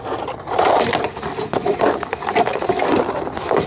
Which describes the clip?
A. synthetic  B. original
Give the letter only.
B